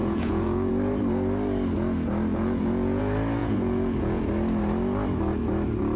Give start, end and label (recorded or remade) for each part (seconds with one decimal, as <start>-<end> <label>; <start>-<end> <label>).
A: 0.0-0.7 remade; 0.7-2.3 recorded; 2.3-3.0 remade; 3.0-3.4 recorded; 3.4-4.2 remade; 4.2-6.0 recorded